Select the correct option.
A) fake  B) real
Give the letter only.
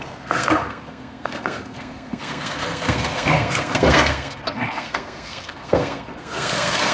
A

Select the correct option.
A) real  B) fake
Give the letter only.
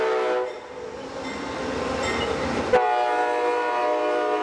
A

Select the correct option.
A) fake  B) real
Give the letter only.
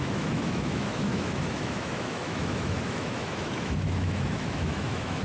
A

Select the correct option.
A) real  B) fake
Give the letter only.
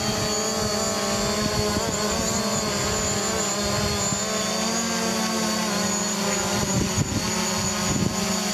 A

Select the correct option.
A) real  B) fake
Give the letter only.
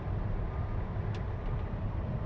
A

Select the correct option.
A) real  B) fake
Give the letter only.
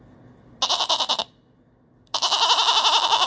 A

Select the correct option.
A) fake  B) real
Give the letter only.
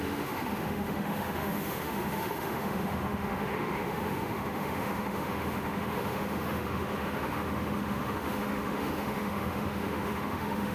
A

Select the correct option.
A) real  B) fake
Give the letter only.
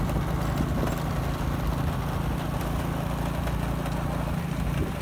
A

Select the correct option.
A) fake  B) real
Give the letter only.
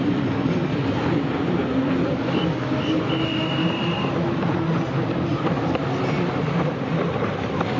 B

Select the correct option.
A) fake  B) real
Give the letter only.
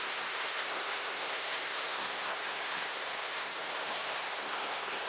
A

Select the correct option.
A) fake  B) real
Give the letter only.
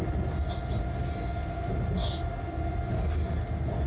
B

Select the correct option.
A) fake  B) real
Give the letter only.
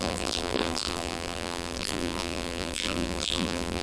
A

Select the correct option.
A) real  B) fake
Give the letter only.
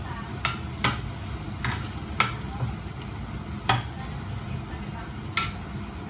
A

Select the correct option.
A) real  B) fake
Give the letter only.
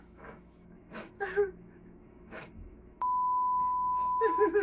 B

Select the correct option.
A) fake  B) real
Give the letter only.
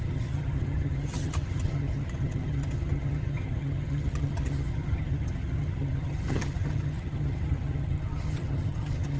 A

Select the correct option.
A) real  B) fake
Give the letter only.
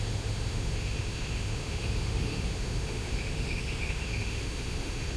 B